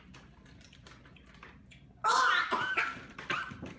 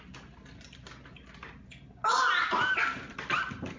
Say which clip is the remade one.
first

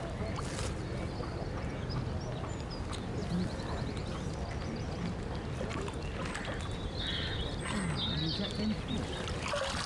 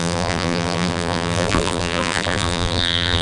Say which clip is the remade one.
second